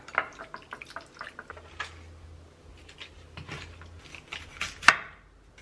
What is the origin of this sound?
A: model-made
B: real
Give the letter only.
B